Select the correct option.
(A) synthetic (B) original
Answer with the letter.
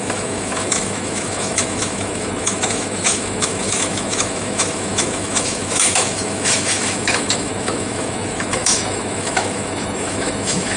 A